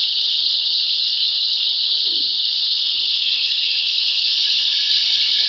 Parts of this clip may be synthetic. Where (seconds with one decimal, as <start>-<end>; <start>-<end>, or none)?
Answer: 0.0-5.5